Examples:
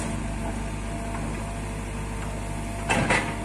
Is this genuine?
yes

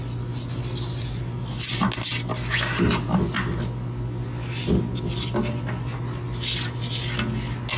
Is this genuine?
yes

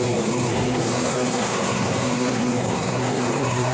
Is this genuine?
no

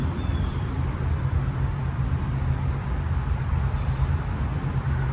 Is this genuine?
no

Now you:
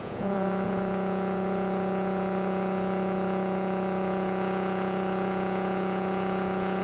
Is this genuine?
no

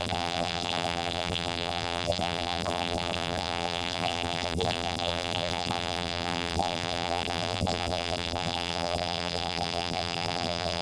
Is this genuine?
no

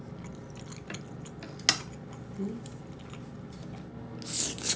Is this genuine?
yes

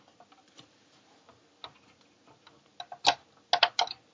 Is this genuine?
yes